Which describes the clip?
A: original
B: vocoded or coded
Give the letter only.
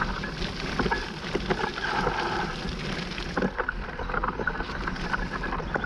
B